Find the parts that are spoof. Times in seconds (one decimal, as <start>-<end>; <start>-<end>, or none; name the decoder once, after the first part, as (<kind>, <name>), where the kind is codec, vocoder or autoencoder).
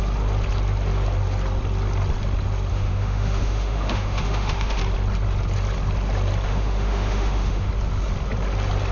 2.7-4.8 (autoencoder, DAC-VAE); 6.5-7.7